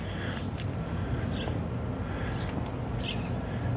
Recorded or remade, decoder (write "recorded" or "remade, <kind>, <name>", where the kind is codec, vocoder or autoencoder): recorded